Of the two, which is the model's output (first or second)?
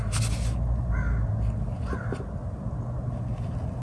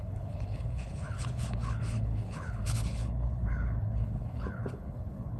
second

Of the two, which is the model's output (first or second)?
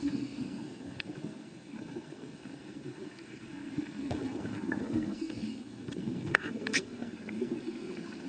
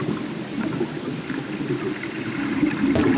first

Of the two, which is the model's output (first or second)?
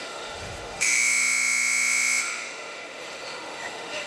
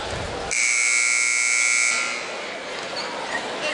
first